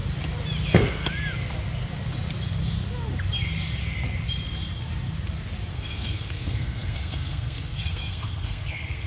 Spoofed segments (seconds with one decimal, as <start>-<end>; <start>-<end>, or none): 0.7-1.1; 5.7-9.1

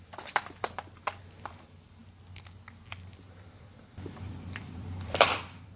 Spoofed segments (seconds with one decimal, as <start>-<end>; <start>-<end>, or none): 1.5-2.0; 2.9-5.8

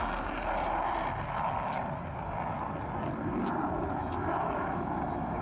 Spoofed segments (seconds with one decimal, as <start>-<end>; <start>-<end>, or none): 4.0-5.4

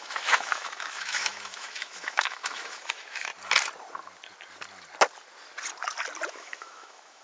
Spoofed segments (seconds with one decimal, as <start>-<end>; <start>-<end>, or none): 0.0-3.3; 6.3-7.2

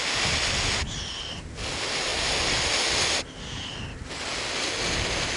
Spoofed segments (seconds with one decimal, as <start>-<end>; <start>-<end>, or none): none

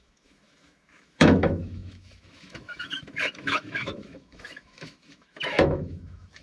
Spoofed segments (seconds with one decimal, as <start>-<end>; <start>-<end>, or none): 0.0-6.4

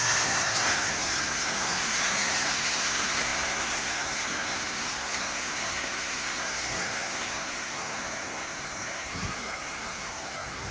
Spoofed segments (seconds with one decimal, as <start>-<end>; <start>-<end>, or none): 0.0-10.7